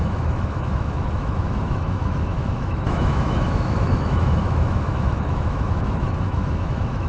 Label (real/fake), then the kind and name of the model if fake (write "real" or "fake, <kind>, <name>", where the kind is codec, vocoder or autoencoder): fake, autoencoder, DAC-VAE